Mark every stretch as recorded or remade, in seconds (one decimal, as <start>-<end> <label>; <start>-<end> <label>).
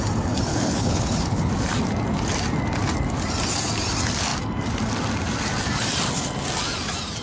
0.0-0.5 recorded; 0.5-1.5 remade; 1.5-7.2 recorded